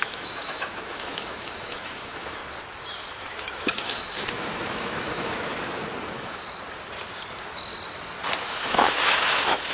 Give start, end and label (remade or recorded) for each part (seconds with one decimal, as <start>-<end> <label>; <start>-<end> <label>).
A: 0.0-2.4 remade; 2.4-3.2 recorded; 3.2-5.5 remade; 5.5-6.0 recorded; 6.0-6.4 remade; 6.4-8.4 recorded; 8.4-9.7 remade